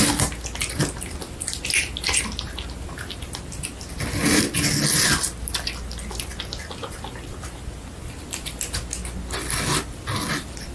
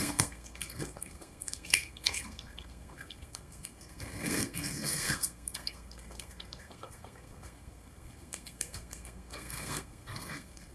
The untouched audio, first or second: first